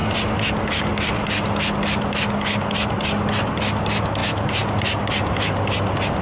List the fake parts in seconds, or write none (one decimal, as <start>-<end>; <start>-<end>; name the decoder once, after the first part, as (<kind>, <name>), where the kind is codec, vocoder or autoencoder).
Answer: none